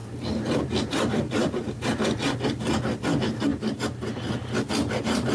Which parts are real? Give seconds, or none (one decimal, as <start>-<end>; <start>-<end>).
2.6-3.5; 4.3-5.3